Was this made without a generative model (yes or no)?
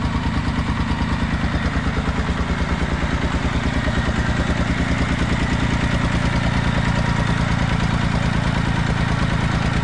yes